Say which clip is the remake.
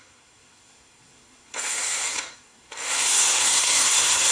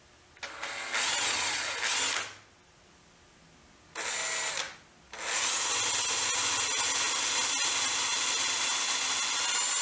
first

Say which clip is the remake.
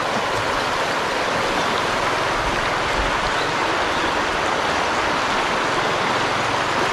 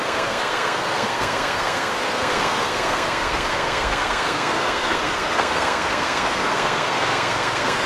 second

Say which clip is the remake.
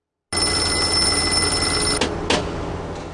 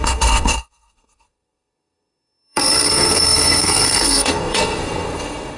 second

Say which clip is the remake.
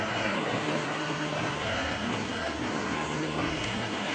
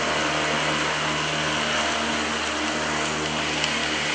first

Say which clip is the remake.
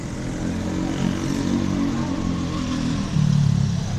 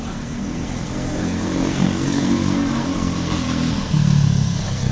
second